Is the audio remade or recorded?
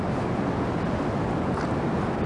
recorded